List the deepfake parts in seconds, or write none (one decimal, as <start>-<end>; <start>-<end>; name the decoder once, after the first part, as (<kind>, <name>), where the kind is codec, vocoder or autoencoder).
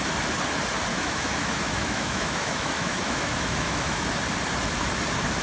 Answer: 0.9-4.1 (autoencoder, DAC-VAE)